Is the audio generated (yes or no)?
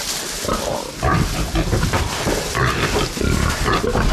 no